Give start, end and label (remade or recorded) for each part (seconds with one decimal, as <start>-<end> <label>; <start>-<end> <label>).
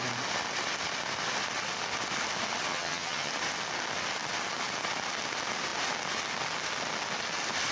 0.0-2.7 recorded; 2.7-3.3 remade; 3.3-7.7 recorded